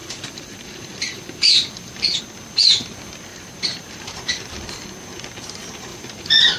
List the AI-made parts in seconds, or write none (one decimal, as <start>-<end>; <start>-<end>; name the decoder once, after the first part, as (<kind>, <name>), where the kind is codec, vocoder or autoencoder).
0.0-2.2 (vocoder, BigVGAN v2); 3.3-4.2; 5.9-6.6